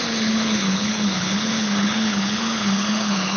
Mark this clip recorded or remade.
remade